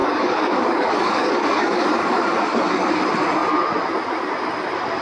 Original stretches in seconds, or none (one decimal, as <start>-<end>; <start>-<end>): 3.0-5.0